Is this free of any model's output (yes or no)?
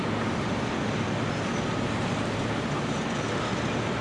yes